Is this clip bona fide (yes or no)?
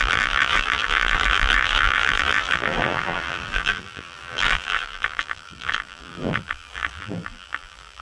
no